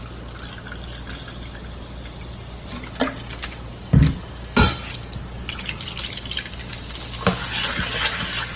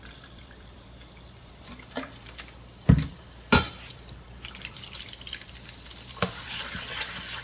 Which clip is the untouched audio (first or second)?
first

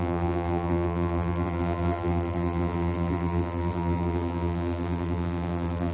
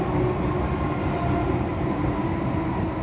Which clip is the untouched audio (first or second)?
second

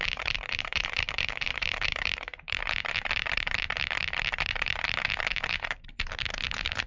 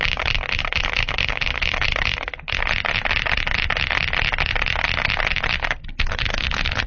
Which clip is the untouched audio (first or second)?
second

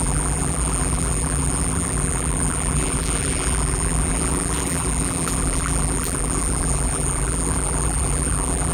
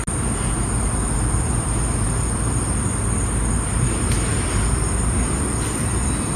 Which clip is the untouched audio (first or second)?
second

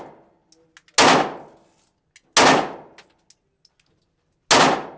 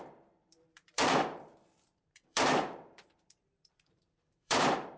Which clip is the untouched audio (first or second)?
first